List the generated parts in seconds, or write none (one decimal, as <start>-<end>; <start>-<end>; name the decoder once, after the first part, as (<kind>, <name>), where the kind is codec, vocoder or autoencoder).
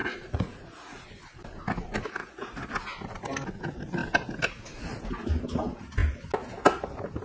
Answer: 0.0-1.0 (vocoder, Vocos); 2.2-2.7